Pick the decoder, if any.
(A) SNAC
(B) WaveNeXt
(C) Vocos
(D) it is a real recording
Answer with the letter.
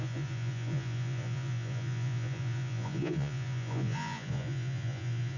C